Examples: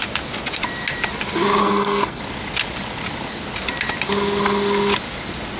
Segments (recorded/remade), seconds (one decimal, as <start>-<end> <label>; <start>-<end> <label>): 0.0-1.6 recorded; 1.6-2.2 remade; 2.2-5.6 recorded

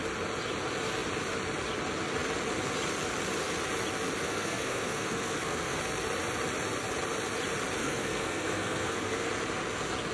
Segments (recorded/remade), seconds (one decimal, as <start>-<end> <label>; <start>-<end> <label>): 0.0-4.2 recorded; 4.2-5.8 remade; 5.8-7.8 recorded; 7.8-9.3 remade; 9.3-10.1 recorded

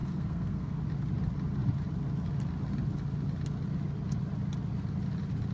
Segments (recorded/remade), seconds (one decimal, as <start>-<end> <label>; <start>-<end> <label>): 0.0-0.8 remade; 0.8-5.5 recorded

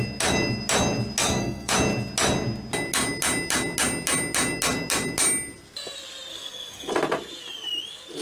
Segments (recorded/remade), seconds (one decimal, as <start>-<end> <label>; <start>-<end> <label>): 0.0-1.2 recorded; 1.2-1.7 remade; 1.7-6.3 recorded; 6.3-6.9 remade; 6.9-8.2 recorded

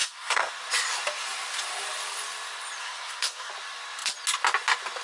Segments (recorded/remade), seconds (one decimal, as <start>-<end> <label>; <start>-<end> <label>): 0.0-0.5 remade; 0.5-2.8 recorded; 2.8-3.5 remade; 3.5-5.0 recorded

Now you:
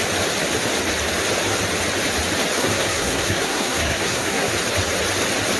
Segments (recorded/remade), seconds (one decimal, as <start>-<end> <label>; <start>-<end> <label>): 0.0-2.6 recorded; 2.6-4.5 remade; 4.5-5.6 recorded

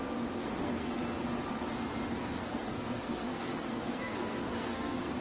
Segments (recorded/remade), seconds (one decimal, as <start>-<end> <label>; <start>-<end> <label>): 0.0-0.4 recorded; 0.4-1.0 remade; 1.0-2.1 recorded; 2.1-5.2 remade

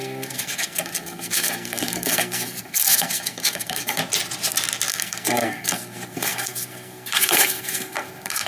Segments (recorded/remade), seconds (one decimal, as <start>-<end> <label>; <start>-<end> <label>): 0.0-4.0 remade; 4.0-4.9 recorded; 4.9-8.5 remade